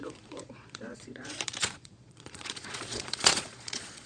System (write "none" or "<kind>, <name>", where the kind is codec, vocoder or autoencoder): vocoder, Vocos